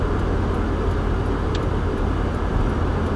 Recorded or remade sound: recorded